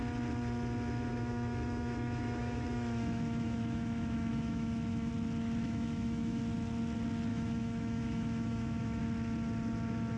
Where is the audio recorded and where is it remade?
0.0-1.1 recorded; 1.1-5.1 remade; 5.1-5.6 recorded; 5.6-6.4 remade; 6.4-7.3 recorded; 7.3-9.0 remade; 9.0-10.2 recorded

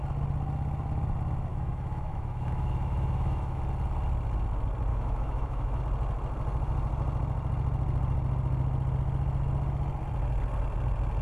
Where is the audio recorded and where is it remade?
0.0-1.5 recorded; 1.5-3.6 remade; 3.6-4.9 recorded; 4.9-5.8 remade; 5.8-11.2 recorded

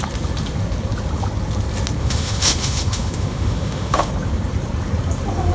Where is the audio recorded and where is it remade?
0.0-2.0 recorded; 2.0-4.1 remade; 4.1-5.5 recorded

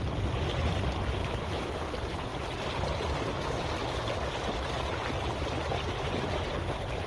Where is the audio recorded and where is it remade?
0.0-1.2 recorded; 1.2-1.7 remade; 1.7-7.1 recorded

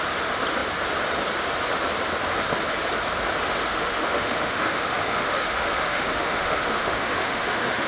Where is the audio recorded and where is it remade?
0.0-3.4 recorded; 3.4-7.9 remade

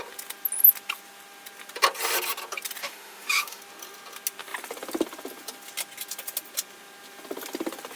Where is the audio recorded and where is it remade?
0.0-2.8 recorded; 2.8-3.6 remade; 3.6-8.0 recorded

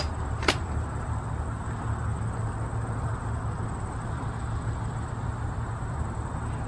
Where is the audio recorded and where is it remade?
0.0-6.7 recorded